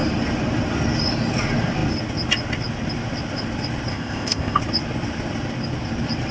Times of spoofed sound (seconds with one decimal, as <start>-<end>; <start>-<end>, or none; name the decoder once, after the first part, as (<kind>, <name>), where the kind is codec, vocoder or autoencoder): 3.9-4.6 (codec, ZipCodec)